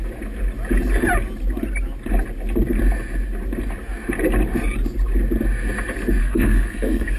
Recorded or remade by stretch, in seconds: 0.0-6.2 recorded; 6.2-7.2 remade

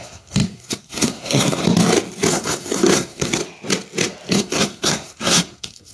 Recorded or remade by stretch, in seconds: 0.0-1.6 remade; 1.6-2.3 recorded; 2.3-3.4 remade; 3.4-4.3 recorded; 4.3-5.9 remade

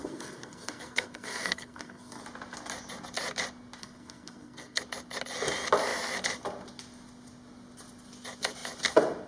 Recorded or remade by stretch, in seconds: 0.0-2.2 remade; 2.2-3.8 recorded; 3.8-4.8 remade; 4.8-9.3 recorded